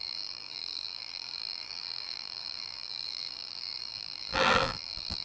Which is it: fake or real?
fake